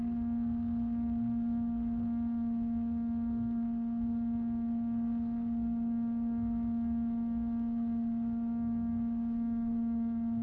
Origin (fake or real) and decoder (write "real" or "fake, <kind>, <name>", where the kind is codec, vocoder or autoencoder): fake, codec, SNAC